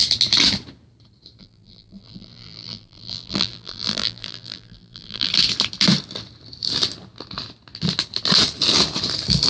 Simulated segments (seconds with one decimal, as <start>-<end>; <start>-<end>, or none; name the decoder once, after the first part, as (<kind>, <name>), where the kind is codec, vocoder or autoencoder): 1.4-5.3 (vocoder, BigVGAN v2)